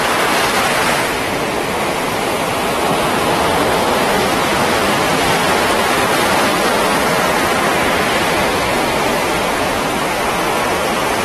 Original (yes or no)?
yes